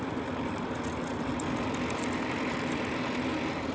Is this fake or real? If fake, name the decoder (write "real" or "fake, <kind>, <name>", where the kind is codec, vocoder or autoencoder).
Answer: real